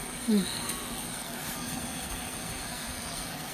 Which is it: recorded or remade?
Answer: remade